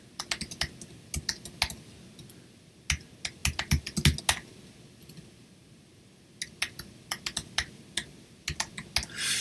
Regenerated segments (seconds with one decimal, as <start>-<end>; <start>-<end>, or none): none